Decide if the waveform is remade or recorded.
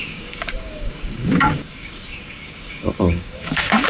remade